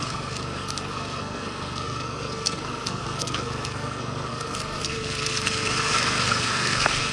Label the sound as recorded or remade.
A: remade